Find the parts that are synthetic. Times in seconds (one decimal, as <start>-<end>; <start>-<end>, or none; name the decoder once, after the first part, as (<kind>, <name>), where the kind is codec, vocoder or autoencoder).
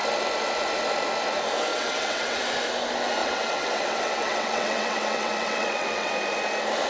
1.7-2.4 (vocoder, WaveNeXt); 3.2-6.1